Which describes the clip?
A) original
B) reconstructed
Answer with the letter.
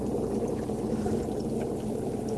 A